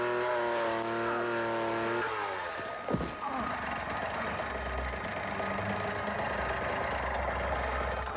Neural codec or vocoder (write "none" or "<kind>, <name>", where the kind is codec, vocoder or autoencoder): none